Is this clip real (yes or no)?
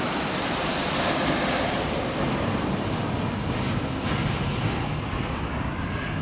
yes